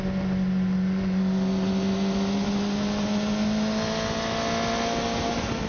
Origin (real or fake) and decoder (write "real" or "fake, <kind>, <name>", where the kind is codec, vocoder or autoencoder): real